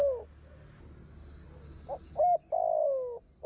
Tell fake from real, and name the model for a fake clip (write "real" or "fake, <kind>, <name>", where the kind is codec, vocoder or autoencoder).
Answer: real